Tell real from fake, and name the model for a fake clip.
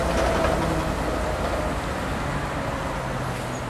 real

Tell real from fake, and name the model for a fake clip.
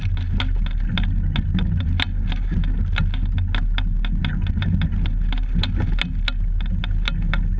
real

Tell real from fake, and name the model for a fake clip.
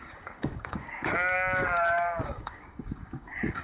fake, codec, DAC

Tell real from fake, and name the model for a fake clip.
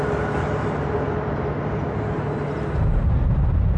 real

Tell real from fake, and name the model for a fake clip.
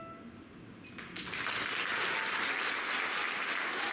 real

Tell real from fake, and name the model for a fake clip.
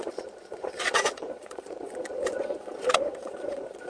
fake, vocoder, Vocos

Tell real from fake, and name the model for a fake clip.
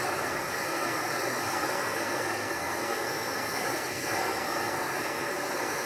fake, codec, SNAC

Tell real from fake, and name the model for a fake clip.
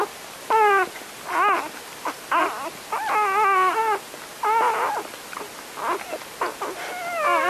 real